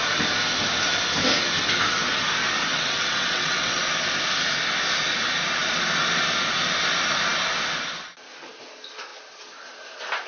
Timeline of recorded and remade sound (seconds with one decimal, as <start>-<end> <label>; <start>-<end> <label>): 0.0-2.7 recorded; 2.7-3.8 remade; 3.8-10.3 recorded